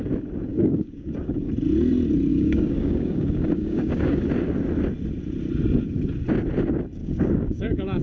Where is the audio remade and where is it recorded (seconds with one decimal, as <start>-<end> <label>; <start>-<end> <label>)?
0.0-0.5 recorded; 0.5-1.5 remade; 1.5-2.3 recorded; 2.3-4.2 remade; 4.2-7.0 recorded; 7.0-8.0 remade